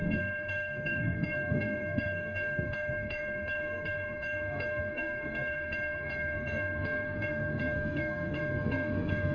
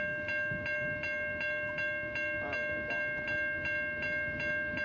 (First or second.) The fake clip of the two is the first